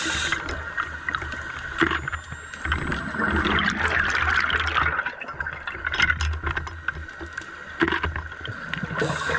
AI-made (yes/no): no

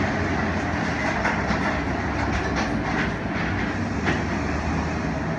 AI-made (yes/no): no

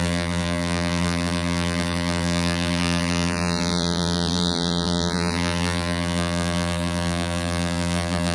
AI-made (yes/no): yes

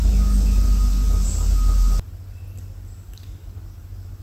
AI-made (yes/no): no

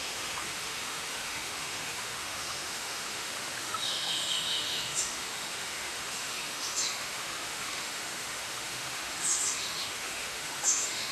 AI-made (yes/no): yes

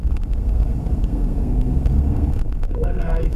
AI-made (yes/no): yes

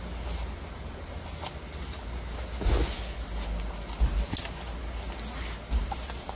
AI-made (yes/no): no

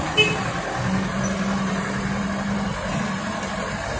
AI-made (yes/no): no